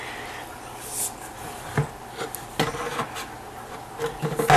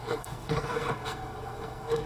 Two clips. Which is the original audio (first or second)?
first